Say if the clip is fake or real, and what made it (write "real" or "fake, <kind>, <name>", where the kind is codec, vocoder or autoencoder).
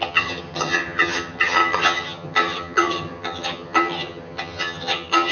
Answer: fake, vocoder, HiFi-GAN